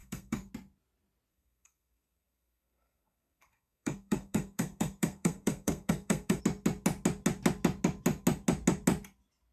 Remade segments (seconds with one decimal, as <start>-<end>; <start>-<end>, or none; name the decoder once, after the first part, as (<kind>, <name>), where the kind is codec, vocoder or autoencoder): 0.0-0.5 (codec, SNAC); 1.3-6.4